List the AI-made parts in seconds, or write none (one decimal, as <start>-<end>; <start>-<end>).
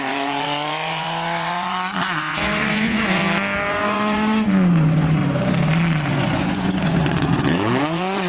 0.0-3.2; 3.7-5.2; 6.1-8.3